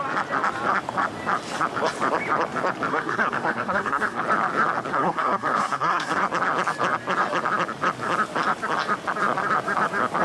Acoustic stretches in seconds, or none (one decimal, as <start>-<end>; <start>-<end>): 0.0-2.9; 4.2-4.9; 6.2-10.2